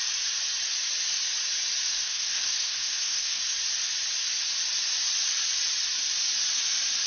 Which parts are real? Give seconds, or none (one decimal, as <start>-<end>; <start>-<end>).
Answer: 0.0-1.9; 3.4-7.1